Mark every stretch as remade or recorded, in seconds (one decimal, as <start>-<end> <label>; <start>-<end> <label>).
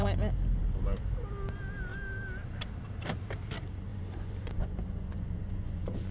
0.0-3.9 recorded; 3.9-6.1 remade